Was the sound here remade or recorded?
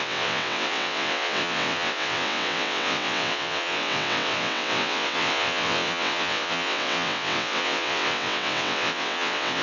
remade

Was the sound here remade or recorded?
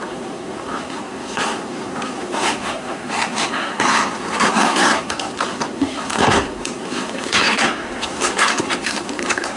remade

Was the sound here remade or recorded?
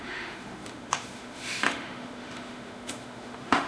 remade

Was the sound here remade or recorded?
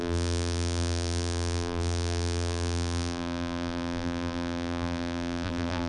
remade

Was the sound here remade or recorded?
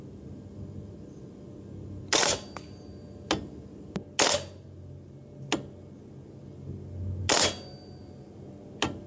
recorded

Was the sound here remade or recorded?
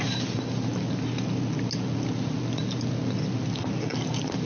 recorded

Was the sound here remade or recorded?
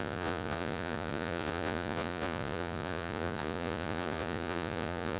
remade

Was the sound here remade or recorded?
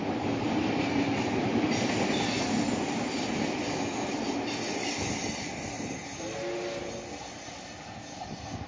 recorded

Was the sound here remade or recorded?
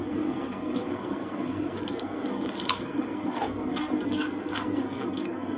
remade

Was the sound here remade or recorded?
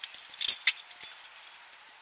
recorded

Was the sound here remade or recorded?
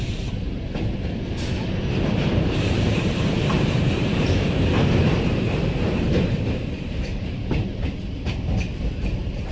remade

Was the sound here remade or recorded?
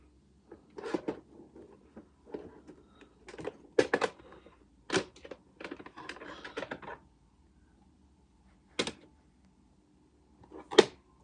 recorded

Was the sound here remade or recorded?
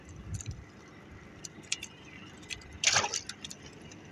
recorded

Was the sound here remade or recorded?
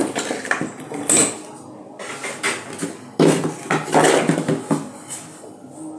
recorded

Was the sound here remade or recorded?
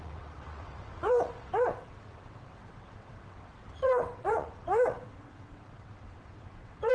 remade